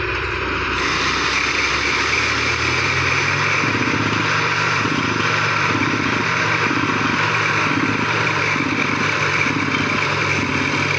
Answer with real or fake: fake